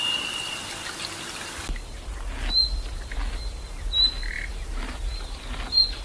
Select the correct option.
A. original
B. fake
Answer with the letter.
A